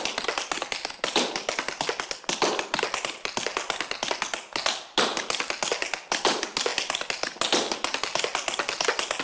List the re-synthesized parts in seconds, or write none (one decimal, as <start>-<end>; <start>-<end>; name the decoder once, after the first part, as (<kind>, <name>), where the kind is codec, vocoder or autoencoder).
none